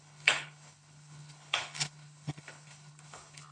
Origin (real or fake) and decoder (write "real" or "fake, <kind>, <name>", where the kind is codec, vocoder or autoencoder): fake, codec, HILCodec